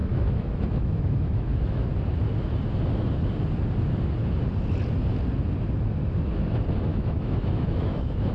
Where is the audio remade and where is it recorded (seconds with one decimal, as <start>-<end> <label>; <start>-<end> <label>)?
0.0-1.9 remade; 1.9-6.9 recorded; 6.9-8.3 remade